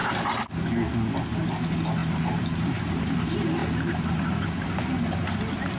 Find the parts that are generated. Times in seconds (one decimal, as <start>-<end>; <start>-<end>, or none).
2.0-3.0

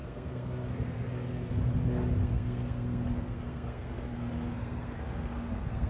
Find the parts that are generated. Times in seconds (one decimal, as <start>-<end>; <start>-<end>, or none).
0.0-1.5; 2.2-5.9

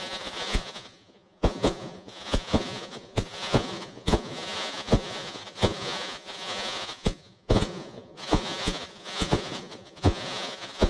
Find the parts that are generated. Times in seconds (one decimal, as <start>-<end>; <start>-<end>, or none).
0.0-10.9

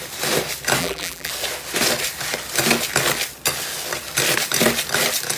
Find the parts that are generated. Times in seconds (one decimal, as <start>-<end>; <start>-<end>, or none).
0.8-1.3

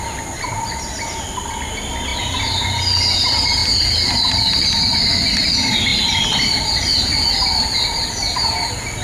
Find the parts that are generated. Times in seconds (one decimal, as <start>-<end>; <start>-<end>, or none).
none

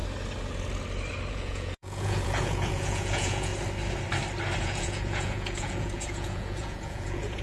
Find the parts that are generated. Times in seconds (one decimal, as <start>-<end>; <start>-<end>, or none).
1.3-3.5; 4.6-7.4

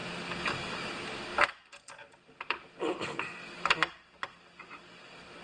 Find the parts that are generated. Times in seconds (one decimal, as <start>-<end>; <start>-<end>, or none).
none